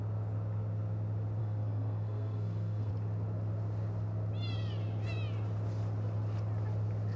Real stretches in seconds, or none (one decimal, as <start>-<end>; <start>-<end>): 0.0-1.4; 2.9-7.2